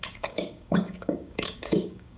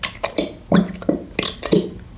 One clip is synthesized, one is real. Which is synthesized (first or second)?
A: first